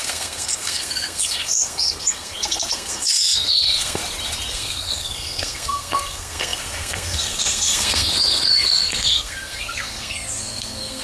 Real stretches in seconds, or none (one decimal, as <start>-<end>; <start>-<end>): 4.0-4.5